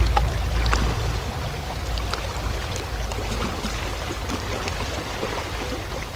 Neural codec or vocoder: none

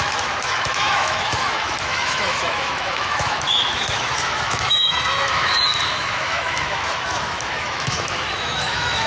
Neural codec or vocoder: autoencoder, DAC-VAE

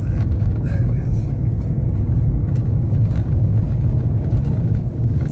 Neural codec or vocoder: codec, DAC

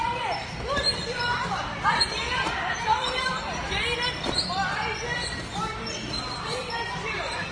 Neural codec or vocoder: vocoder, BigVGAN v2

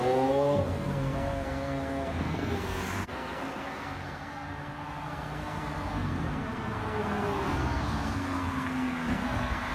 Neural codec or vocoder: codec, SNAC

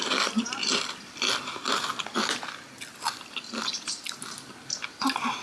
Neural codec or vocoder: none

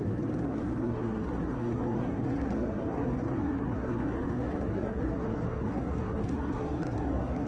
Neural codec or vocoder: codec, SNAC